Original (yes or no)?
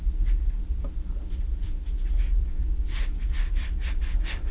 yes